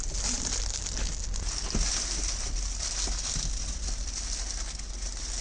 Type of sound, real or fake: real